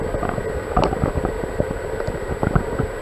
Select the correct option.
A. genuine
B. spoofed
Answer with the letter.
A